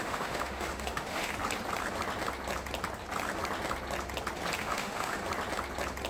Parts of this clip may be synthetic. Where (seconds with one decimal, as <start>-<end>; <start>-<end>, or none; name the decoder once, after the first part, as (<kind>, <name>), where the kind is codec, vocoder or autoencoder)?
0.0-1.3 (autoencoder, DAC-VAE); 4.6-5.2